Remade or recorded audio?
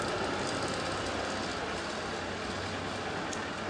recorded